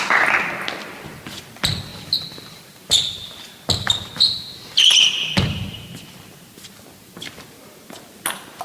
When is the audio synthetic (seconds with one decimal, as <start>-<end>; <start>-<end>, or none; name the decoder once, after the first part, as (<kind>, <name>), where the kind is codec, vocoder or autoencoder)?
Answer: none